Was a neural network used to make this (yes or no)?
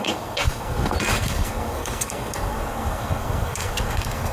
yes